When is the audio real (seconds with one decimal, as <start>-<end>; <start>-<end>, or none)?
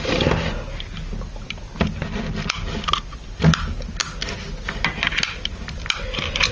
0.0-6.5